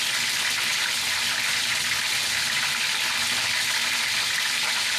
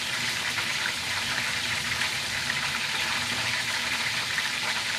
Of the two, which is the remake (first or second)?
second